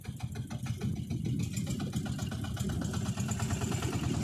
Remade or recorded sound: recorded